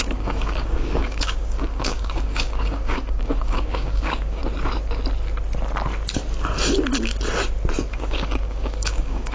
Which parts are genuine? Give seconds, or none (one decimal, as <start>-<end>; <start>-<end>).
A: 4.4-7.9

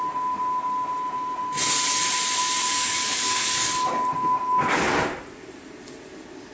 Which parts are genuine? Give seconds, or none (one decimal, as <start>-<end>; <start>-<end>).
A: 0.0-2.7; 3.9-6.5